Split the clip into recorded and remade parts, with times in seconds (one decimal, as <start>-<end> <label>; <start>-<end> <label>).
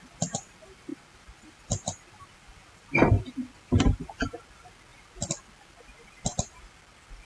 0.0-7.2 recorded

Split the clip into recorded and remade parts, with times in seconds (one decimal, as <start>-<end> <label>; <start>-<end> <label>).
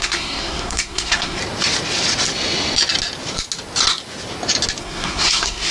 0.0-1.4 remade; 1.4-4.8 recorded; 4.8-5.7 remade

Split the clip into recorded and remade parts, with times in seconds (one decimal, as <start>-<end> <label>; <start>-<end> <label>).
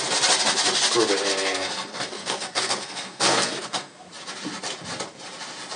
0.0-1.3 recorded; 1.3-4.1 remade; 4.1-5.8 recorded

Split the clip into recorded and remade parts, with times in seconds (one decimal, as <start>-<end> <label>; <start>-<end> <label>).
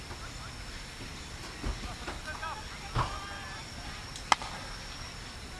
0.0-5.6 recorded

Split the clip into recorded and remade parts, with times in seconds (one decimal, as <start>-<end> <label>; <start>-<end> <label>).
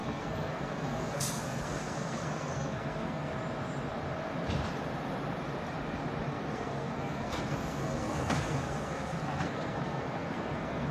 0.0-3.3 remade; 3.3-6.3 recorded; 6.3-10.9 remade